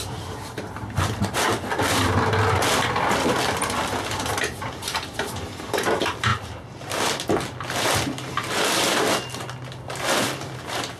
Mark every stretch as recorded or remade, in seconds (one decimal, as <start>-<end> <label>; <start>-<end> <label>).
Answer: 0.0-11.0 recorded